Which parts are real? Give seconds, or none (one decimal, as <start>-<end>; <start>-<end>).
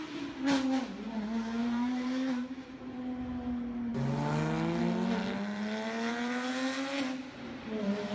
0.0-1.6; 2.8-8.1